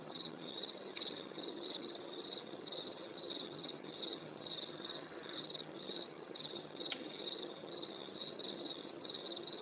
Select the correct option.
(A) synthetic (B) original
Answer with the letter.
A